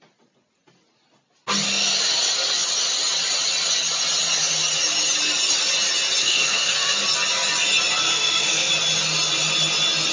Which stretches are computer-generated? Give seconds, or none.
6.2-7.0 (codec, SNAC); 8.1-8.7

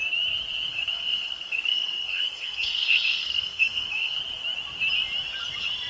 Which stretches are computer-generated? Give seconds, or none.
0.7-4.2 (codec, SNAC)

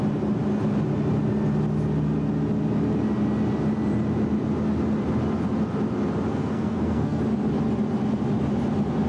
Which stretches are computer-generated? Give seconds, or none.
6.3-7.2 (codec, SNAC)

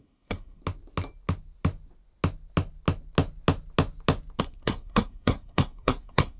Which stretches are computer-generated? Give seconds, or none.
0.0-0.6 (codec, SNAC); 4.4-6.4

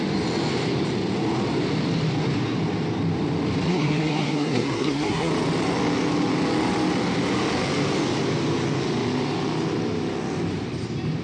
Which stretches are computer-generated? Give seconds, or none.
3.7-5.3 (codec, SNAC)

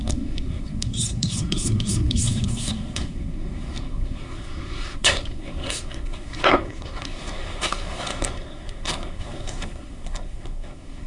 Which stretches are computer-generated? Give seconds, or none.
0.0-11.1 (codec, SNAC)

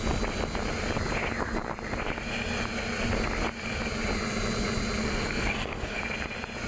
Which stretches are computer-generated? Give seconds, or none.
5.0-6.0 (codec, SNAC)